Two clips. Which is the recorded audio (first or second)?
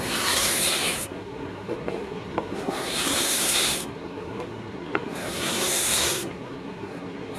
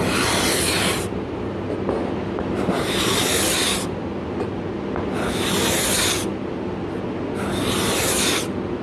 second